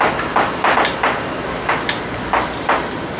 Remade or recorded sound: recorded